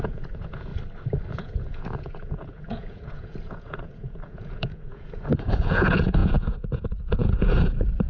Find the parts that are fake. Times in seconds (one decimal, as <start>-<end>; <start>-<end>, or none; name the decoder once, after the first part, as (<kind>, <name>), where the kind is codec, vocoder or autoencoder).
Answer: 0.0-0.7 (vocoder, Vocos); 1.3-8.1